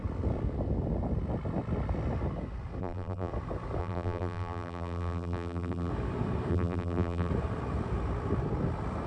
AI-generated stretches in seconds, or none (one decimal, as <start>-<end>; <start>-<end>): 2.8-3.3; 3.8-5.9; 6.5-7.3